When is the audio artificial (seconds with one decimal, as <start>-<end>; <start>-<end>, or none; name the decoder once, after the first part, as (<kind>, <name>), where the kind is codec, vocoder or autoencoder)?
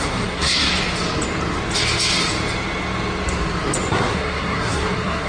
0.0-0.7 (codec, SNAC); 3.9-5.3